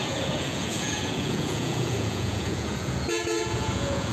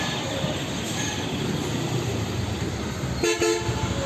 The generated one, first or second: first